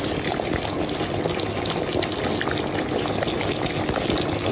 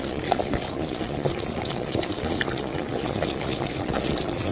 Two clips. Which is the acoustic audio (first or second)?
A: first